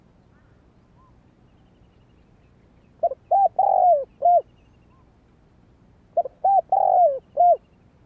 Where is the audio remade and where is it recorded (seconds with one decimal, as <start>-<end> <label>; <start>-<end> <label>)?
0.0-8.1 recorded